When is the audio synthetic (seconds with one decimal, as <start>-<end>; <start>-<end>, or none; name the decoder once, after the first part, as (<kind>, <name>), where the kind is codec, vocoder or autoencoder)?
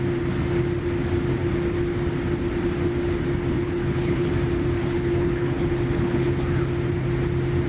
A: 3.5-4.3 (codec, HILCodec); 4.8-6.4